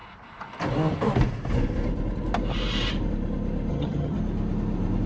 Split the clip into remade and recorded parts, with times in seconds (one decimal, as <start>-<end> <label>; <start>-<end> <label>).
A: 0.0-3.7 recorded; 3.7-4.2 remade; 4.2-5.1 recorded